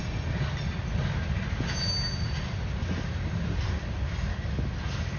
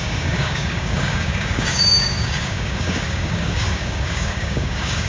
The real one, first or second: first